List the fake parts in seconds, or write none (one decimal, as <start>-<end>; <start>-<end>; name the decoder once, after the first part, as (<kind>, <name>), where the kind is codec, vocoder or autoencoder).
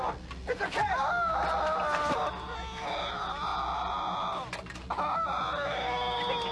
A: none